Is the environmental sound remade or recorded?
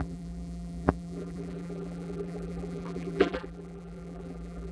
remade